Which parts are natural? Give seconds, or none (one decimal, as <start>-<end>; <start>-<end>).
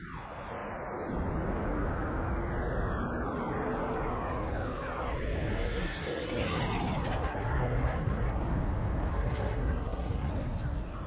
0.0-5.5; 6.6-7.2; 8.4-9.1; 10.3-11.1